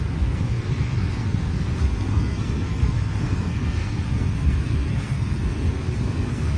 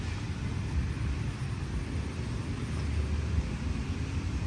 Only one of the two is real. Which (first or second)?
second